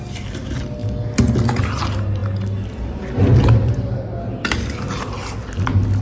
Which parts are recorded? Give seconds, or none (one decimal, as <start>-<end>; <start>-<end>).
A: 0.0-6.0